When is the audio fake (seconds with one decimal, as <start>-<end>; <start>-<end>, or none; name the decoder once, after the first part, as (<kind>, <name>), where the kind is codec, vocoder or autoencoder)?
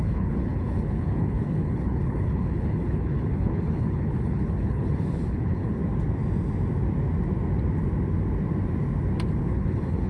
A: 0.0-5.8 (codec, HILCodec); 9.4-10.1